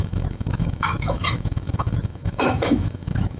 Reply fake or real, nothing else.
fake